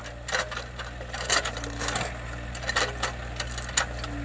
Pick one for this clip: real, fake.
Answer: real